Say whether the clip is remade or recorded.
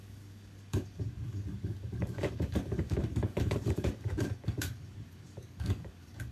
remade